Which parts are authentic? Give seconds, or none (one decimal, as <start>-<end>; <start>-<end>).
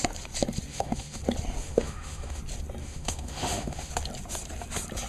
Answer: 0.0-0.7; 1.2-1.6; 2.4-2.8; 3.9-5.1